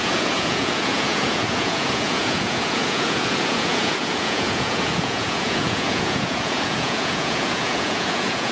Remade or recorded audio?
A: remade